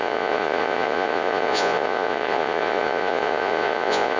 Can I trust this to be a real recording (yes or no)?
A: no